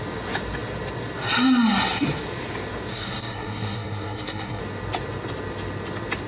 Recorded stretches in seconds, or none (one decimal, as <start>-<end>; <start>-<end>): 0.0-2.9; 4.6-6.3